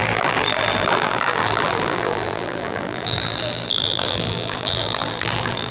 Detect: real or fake fake